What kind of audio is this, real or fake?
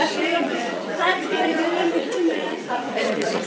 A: fake